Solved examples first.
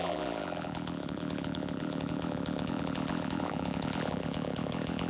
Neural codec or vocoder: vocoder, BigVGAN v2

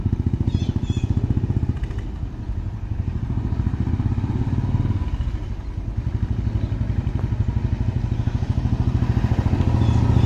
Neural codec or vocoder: none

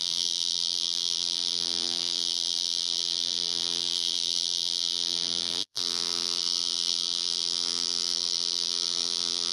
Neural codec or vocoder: vocoder, BigVGAN v2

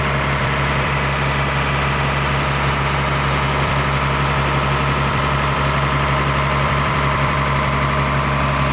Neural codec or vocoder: vocoder, BigVGAN v2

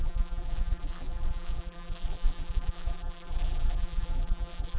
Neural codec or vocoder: vocoder, BigVGAN v2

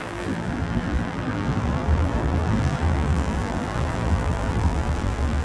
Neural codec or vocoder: vocoder, BigVGAN v2